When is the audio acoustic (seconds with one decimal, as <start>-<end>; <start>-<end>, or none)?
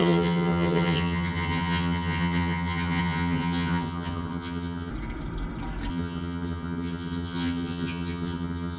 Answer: 4.9-5.9